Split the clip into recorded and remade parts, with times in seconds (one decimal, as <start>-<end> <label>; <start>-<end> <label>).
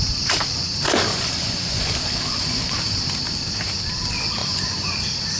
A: 0.0-1.1 recorded; 1.1-2.7 remade; 2.7-4.4 recorded; 4.4-5.0 remade; 5.0-5.4 recorded